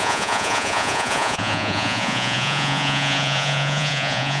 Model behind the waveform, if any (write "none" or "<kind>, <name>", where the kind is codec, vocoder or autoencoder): vocoder, Vocos